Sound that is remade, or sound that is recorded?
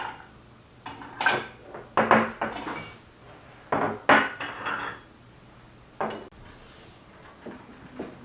recorded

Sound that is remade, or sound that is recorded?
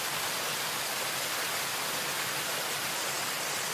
recorded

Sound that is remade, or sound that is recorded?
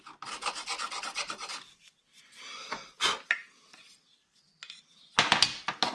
recorded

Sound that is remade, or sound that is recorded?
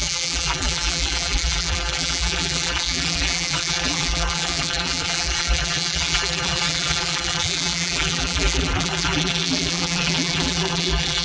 remade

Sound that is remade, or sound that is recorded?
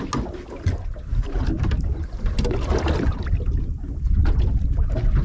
recorded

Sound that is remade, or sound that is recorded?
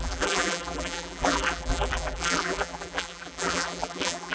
remade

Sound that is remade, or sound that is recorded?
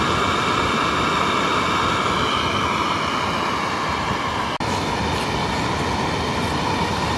recorded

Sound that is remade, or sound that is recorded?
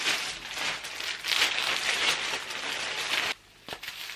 recorded